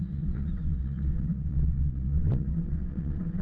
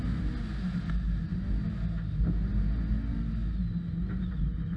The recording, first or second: second